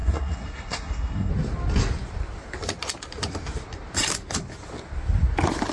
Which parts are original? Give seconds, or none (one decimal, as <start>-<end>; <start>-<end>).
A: 1.3-5.7